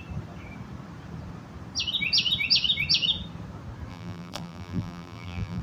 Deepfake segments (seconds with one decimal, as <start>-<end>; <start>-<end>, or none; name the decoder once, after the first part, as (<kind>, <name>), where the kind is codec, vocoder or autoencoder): 3.9-5.6 (vocoder, BigVGAN v2)

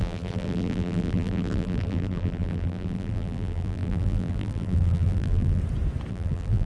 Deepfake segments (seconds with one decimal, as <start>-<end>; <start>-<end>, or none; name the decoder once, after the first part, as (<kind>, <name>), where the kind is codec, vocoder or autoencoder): 0.0-5.6 (vocoder, BigVGAN v2); 6.1-6.7

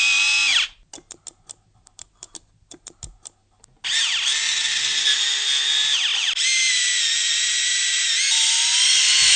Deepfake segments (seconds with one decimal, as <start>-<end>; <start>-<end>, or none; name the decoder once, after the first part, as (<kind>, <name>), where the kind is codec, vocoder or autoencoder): none

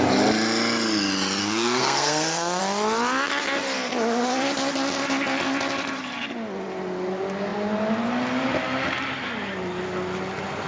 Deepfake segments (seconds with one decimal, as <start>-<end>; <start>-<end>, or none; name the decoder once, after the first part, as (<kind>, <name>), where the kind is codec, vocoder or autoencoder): 1.4-2.6 (codec, SNAC)